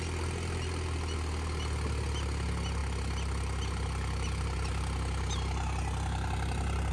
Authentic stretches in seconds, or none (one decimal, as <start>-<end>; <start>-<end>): 0.0-6.9